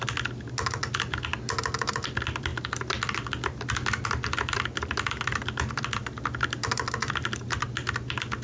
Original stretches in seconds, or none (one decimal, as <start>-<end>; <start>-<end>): 0.0-8.4